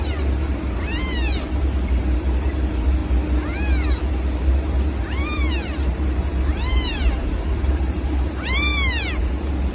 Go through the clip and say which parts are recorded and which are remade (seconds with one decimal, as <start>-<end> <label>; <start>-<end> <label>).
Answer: 0.0-3.0 remade; 3.0-4.1 recorded; 4.1-8.7 remade; 8.7-9.2 recorded; 9.2-9.7 remade